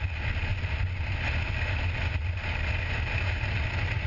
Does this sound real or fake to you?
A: real